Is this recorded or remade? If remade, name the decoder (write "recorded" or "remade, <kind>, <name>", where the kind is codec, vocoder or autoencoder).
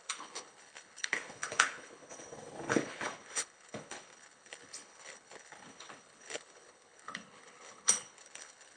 remade, codec, HILCodec